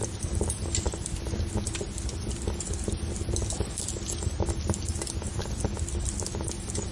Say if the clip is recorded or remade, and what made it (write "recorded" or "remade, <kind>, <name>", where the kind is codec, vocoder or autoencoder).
recorded